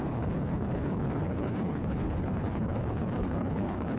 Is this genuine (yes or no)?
no